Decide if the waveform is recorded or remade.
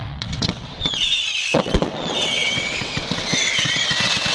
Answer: remade